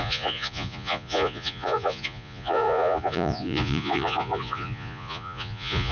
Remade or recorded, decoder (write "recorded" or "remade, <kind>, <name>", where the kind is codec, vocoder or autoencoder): remade, vocoder, Vocos